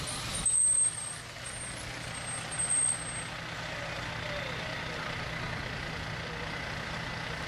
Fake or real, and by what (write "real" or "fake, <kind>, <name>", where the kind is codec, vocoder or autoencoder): real